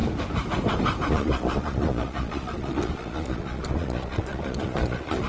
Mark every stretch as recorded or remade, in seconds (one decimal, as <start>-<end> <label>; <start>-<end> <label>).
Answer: 0.0-1.1 recorded; 1.1-5.3 remade